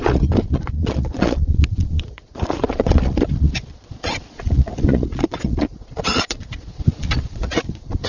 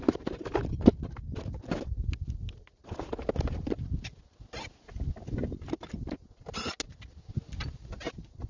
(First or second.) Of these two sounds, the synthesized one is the first